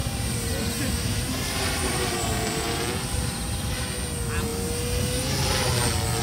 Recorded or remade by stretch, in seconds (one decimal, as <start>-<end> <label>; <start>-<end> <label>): 0.0-3.7 remade; 3.7-6.2 recorded